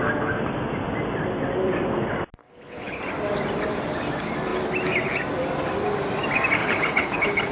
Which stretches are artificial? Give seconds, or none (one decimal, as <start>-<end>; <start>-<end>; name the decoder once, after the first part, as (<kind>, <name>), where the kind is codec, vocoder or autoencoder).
2.4-3.0 (codec, HILCodec); 6.6-7.5